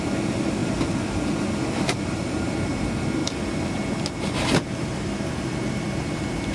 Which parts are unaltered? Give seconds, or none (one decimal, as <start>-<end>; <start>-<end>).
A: 0.0-6.5